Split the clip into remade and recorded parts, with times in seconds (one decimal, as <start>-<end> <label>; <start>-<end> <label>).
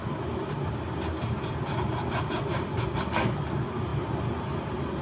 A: 0.0-5.0 recorded